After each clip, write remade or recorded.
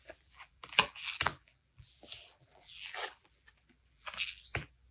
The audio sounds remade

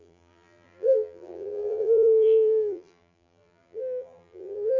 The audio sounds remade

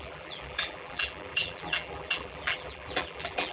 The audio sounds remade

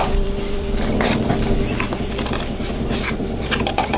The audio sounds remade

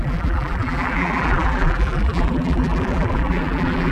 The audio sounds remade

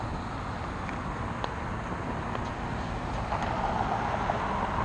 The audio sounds recorded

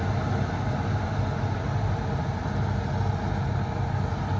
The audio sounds recorded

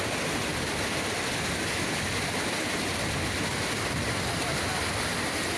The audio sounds recorded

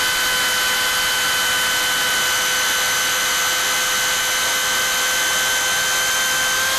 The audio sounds recorded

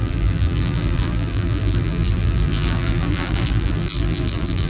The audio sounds remade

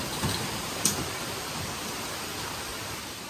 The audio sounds recorded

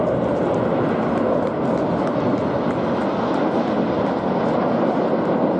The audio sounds recorded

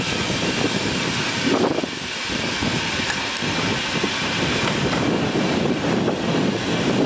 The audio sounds remade